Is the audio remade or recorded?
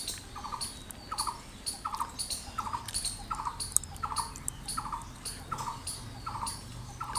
recorded